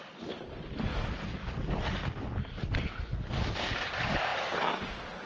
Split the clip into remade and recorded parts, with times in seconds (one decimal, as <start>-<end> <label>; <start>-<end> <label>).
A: 0.0-5.3 recorded